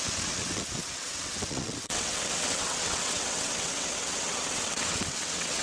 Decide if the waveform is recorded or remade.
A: remade